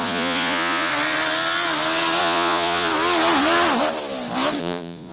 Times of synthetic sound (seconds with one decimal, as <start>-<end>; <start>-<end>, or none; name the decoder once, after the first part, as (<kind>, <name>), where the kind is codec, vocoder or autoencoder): 0.0-0.9 (vocoder, Vocos); 2.2-2.9; 4.6-5.1